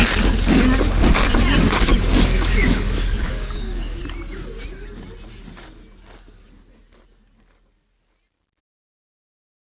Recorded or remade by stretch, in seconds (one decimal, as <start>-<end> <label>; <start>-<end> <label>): 0.0-1.9 recorded; 1.9-4.0 remade; 4.0-9.7 recorded